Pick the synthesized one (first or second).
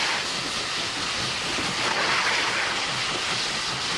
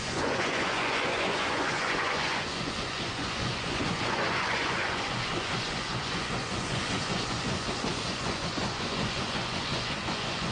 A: second